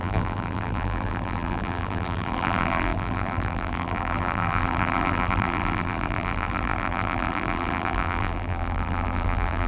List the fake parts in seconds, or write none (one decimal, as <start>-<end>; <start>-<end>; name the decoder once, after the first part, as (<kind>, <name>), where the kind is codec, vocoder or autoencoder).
0.0-9.7 (vocoder, BigVGAN v2)